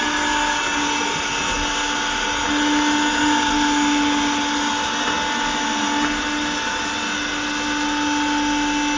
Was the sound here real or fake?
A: real